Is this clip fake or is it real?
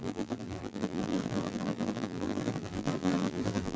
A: fake